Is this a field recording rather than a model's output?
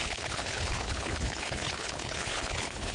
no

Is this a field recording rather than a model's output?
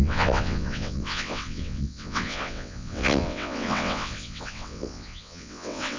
no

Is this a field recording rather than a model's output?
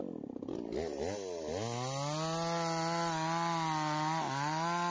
yes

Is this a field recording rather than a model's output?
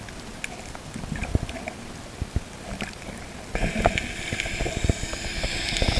yes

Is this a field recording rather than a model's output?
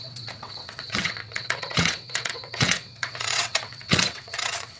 no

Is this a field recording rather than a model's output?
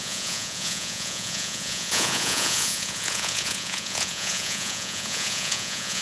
no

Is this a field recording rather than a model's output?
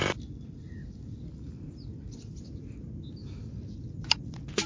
yes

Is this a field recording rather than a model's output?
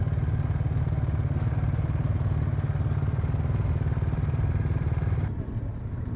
yes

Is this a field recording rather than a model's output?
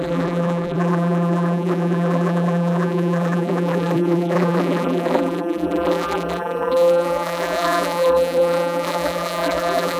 no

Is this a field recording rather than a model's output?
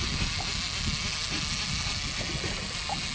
yes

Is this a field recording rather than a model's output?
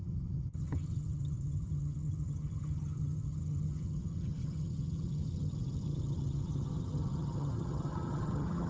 no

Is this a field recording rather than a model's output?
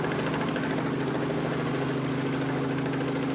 yes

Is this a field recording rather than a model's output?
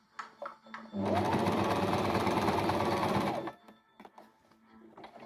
yes